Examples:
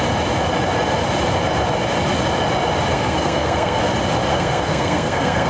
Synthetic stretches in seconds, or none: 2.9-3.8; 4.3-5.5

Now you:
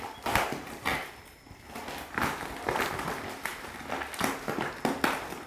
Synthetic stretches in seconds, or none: none

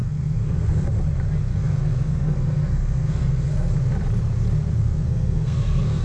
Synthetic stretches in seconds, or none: 0.0-0.9; 1.5-3.7; 4.7-6.0

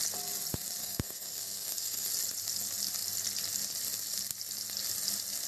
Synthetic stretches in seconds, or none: 0.8-2.1

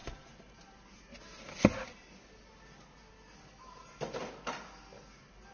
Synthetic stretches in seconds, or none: none

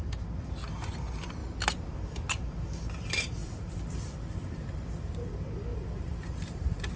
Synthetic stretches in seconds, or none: 1.4-1.9; 3.4-5.3; 5.7-7.0

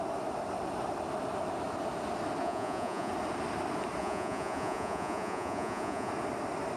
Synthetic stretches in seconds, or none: 2.4-3.1; 4.0-6.1

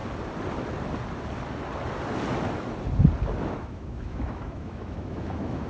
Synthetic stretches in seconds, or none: 3.4-5.7